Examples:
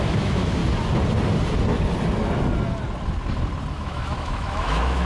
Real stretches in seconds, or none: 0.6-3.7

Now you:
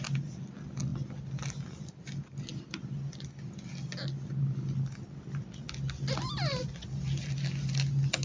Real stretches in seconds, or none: 0.0-8.2

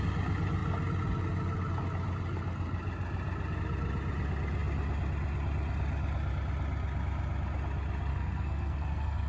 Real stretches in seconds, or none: 0.0-8.1

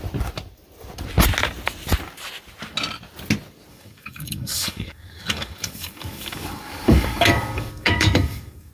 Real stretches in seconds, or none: 0.0-3.7